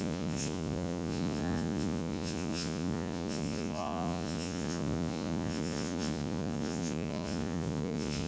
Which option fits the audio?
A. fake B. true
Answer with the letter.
A